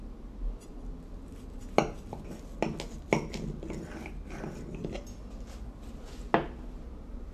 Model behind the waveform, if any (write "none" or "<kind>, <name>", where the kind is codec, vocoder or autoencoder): none